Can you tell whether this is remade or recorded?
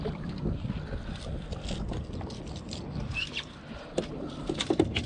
recorded